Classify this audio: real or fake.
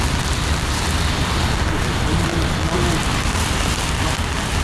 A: real